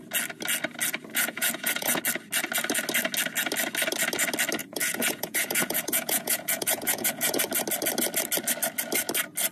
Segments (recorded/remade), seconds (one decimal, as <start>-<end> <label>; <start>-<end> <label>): 0.0-1.1 recorded; 1.1-2.0 remade; 2.0-4.6 recorded; 4.6-7.4 remade; 7.4-9.5 recorded